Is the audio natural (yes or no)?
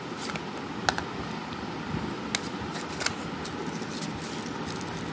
yes